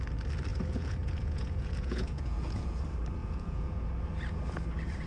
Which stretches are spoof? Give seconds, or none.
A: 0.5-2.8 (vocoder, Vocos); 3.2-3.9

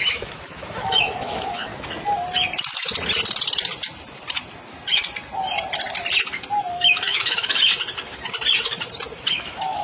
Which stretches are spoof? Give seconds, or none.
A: 0.0-1.7 (autoencoder, DAC-VAE); 6.7-7.7; 9.2-9.8